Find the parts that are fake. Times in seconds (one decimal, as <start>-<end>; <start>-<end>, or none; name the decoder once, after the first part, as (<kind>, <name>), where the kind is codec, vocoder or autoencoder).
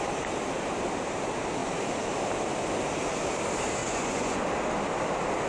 3.8-4.4 (vocoder, Vocos)